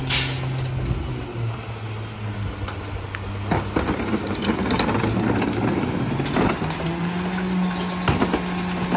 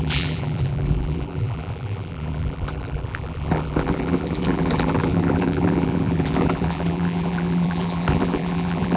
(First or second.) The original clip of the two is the first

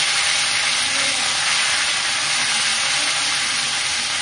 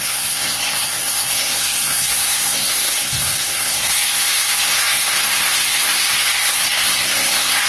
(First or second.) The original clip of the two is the first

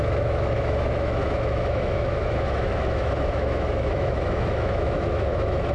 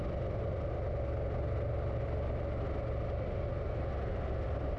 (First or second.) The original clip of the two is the second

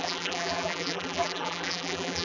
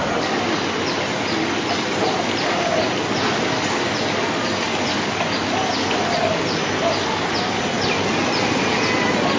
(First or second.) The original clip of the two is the second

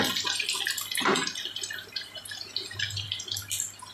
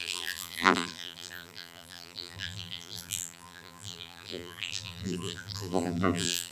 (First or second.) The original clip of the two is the first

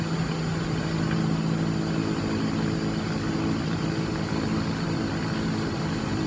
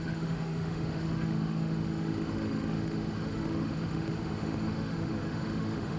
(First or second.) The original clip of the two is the first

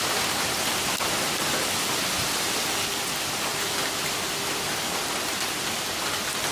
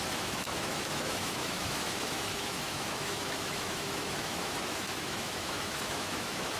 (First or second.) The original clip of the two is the first